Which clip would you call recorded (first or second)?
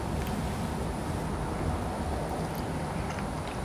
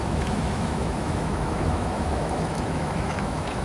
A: first